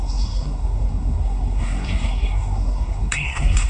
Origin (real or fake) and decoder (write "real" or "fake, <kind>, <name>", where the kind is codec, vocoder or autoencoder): fake, codec, SNAC